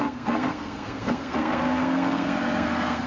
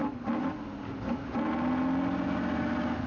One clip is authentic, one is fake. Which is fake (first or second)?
first